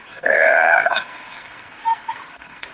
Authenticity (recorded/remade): remade